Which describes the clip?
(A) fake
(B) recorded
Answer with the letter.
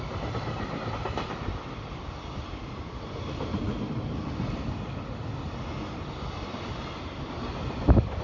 B